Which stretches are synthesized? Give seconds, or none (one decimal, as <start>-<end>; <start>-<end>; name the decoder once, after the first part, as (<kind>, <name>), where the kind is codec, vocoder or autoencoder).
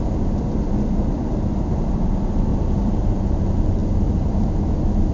2.5-3.2 (vocoder, BigVGAN v2)